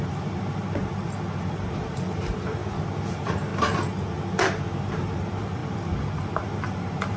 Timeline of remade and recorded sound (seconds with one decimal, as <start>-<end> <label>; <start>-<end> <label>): 0.0-2.6 remade; 2.6-3.1 recorded; 3.1-3.5 remade; 3.5-4.8 recorded; 4.8-7.2 remade

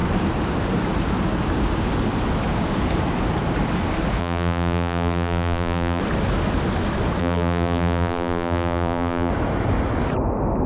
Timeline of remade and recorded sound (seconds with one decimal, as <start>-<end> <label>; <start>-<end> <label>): 0.0-4.2 recorded; 4.2-6.0 remade; 6.0-7.2 recorded; 7.2-9.3 remade; 9.3-10.7 recorded

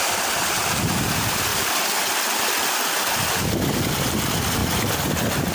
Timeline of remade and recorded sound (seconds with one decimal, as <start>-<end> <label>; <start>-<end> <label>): 0.0-1.5 remade; 1.5-3.2 recorded; 3.2-4.6 remade; 4.6-5.5 recorded

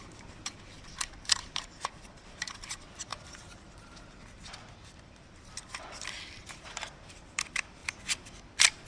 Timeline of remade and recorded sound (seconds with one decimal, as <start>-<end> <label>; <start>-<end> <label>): 0.0-7.8 remade; 7.8-8.5 recorded; 8.5-8.9 remade

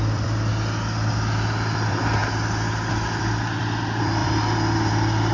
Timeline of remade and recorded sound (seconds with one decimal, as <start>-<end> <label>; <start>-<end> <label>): 0.0-0.5 remade; 0.5-1.1 recorded; 1.1-2.2 remade; 2.2-2.9 recorded; 2.9-5.3 remade